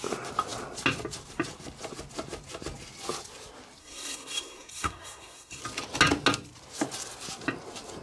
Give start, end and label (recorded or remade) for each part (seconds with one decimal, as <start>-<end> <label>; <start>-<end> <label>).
0.0-3.8 recorded; 3.8-5.6 remade; 5.6-8.0 recorded